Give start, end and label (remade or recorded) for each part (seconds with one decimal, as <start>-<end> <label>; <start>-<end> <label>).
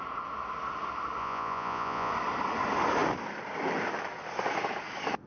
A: 0.0-1.2 recorded; 1.2-2.1 remade; 2.1-5.3 recorded